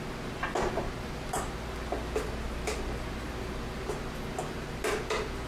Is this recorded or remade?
recorded